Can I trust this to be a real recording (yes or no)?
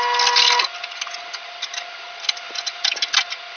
yes